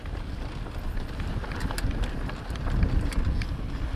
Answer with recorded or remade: recorded